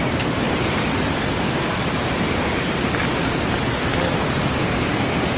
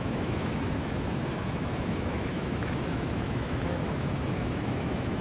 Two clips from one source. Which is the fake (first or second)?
second